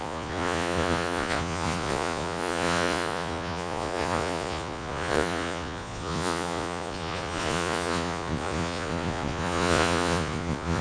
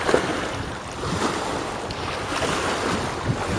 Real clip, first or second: second